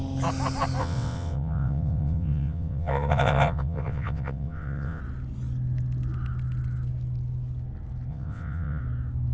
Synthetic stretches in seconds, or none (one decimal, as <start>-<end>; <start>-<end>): 0.8-5.0; 8.1-8.8

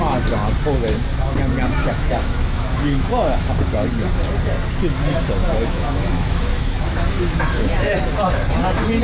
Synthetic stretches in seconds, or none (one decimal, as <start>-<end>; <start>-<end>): 1.8-3.5; 5.4-7.4